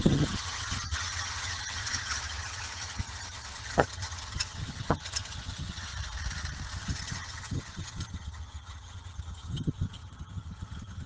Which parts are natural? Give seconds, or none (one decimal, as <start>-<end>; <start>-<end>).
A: 5.9-6.7